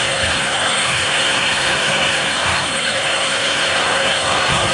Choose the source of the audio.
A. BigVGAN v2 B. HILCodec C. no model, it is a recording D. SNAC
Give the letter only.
D